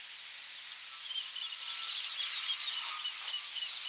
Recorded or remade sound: recorded